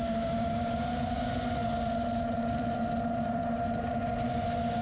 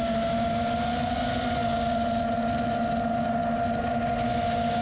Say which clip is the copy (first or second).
first